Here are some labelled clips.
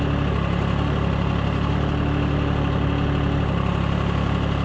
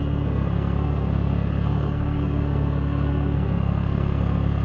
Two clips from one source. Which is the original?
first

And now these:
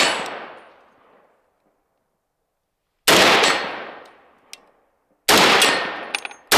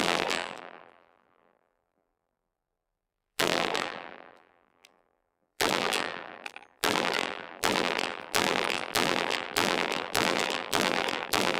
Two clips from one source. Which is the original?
first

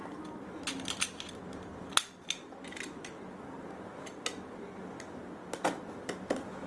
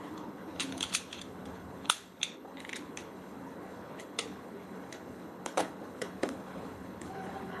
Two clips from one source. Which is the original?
first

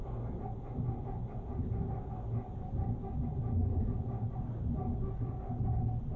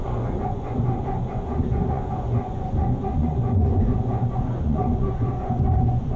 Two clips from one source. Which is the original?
first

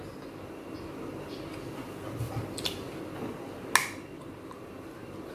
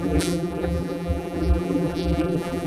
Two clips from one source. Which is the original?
first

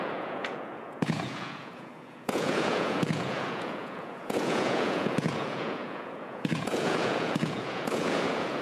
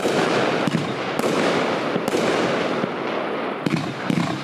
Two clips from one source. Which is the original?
second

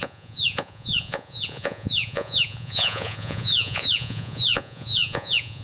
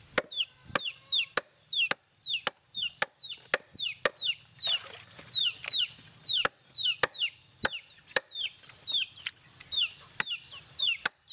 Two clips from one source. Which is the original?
second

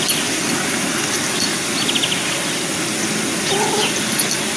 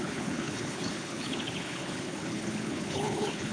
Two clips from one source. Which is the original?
first